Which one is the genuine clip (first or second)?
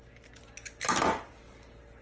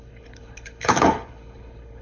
first